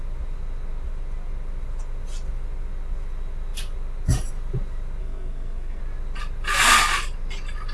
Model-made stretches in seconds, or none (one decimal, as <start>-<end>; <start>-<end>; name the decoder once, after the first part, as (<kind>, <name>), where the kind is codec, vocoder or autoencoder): 5.0-5.8 (codec, SNAC)